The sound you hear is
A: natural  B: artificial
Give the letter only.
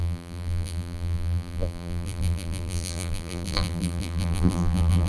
B